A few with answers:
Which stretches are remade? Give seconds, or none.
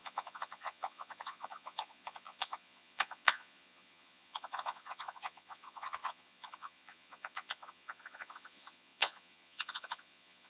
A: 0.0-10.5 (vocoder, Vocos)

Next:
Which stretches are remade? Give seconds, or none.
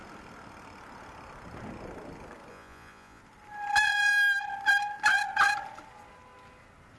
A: 2.5-3.2 (vocoder, Vocos)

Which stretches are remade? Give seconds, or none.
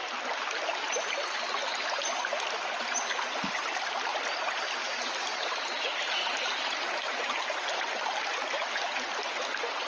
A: none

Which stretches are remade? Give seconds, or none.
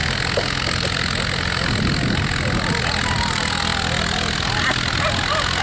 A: none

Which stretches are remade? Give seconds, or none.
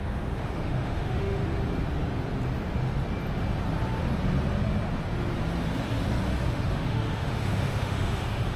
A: 0.0-1.4 (autoencoder, DAC-VAE); 6.5-8.6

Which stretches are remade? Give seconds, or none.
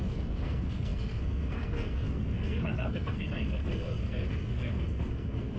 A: 0.0-5.6 (codec, SNAC)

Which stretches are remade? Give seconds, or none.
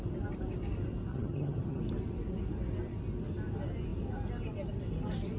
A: 1.1-1.8 (vocoder, HiFi-GAN)